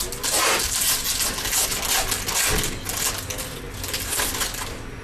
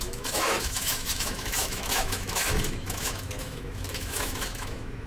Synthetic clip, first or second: second